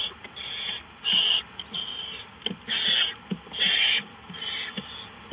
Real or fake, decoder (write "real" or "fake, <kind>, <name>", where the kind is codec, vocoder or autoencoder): real